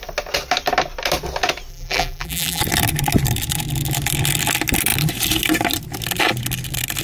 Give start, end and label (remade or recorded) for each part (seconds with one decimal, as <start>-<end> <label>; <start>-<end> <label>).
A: 0.0-1.7 recorded; 1.7-2.6 remade; 2.6-7.0 recorded